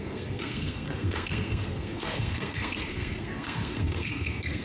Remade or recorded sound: remade